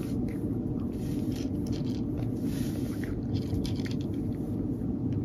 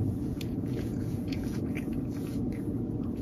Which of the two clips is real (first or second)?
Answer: first